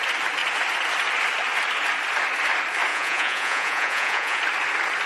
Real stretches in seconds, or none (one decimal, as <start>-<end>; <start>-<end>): 0.0-2.9; 4.4-5.1